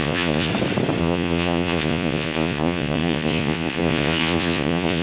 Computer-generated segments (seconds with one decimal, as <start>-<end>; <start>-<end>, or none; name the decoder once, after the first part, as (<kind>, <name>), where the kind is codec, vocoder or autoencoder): 0.0-0.5 (vocoder, Vocos); 1.0-5.0